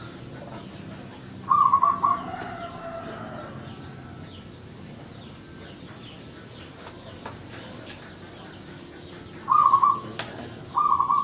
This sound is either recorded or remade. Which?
recorded